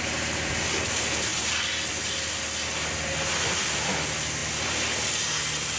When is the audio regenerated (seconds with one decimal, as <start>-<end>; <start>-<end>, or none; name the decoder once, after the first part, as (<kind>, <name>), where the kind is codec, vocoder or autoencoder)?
none